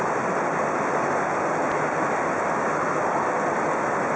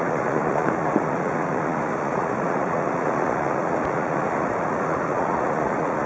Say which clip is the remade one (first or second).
second